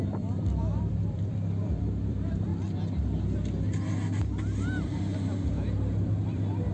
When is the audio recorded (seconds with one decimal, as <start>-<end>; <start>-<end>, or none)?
2.5-5.5